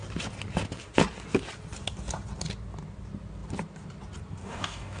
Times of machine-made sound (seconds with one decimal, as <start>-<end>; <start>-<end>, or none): 4.4-5.0